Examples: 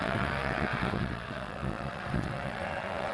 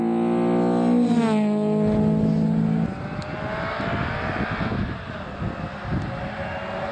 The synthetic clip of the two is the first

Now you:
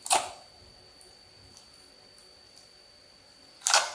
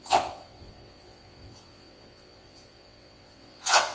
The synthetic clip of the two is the second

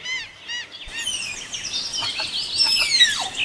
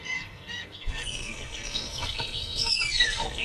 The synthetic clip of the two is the second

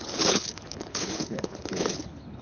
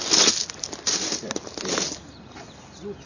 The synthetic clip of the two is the first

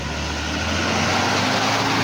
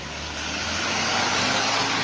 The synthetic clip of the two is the second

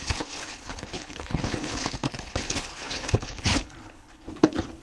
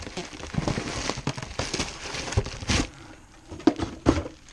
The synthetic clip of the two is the first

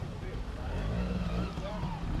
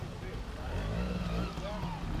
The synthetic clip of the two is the first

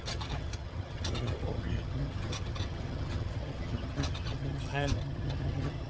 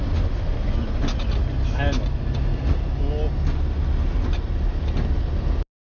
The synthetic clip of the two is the first